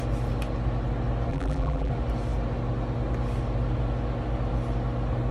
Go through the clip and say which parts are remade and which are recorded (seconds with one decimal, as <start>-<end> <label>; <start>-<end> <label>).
0.0-1.3 recorded; 1.3-1.9 remade; 1.9-5.3 recorded